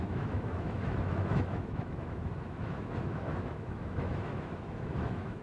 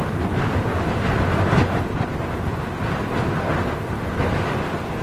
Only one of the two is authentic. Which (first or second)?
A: second